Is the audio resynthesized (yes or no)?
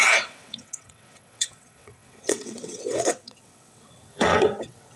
yes